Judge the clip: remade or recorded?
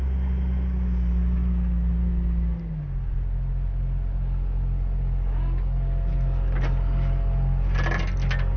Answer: recorded